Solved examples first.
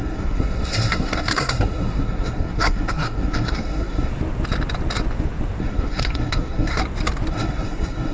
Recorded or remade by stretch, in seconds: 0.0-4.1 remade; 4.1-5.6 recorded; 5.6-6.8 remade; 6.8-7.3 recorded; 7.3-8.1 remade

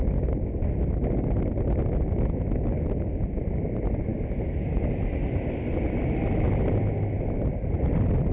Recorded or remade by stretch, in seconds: 0.0-8.3 recorded